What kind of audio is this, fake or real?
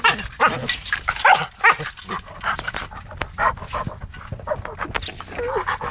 real